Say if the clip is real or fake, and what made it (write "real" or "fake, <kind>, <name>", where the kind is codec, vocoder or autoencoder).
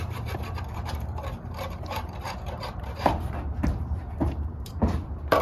fake, vocoder, BigVGAN v2